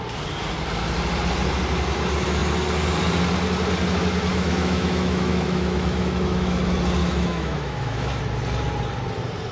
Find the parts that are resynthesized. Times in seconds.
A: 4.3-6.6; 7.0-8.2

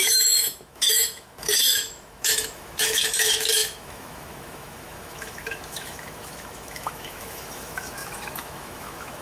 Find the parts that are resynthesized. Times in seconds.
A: 0.0-9.2

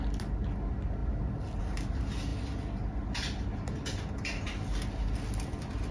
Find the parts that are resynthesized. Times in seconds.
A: none

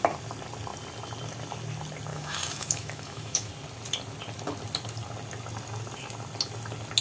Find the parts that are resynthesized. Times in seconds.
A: 2.1-3.5